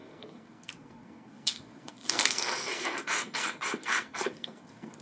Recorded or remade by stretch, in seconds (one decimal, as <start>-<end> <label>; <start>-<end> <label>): 0.0-5.0 remade